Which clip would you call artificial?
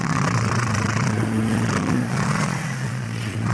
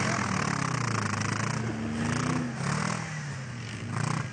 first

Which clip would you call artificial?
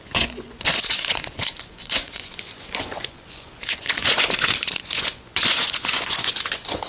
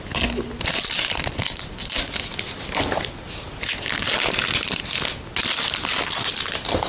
first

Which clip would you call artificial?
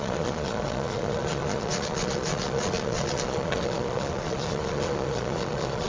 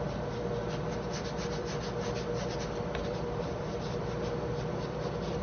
first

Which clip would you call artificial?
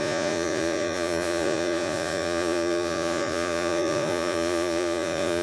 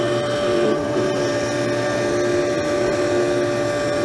first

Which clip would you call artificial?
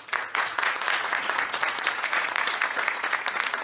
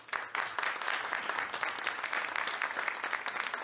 first